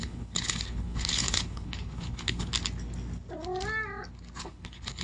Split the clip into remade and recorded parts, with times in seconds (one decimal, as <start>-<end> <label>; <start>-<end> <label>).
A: 0.0-2.5 remade; 2.5-4.4 recorded; 4.4-5.0 remade